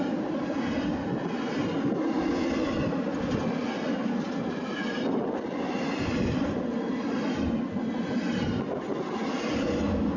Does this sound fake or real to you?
real